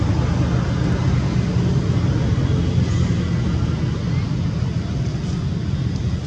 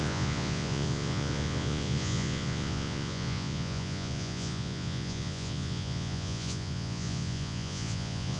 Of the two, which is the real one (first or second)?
first